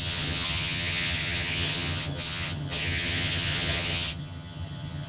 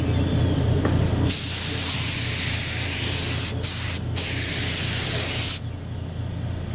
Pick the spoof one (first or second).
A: first